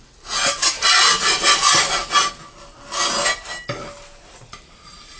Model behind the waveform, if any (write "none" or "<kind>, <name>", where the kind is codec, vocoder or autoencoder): none